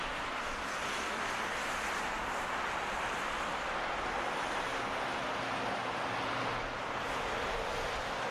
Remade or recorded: recorded